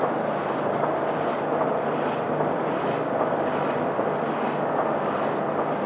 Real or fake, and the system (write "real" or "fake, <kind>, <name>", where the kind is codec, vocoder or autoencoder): real